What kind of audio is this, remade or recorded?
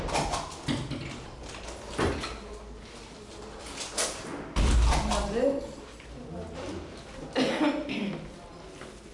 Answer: recorded